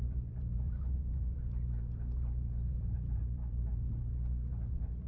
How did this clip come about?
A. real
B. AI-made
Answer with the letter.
B